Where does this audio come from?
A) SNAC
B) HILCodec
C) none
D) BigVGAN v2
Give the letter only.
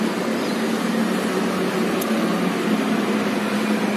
C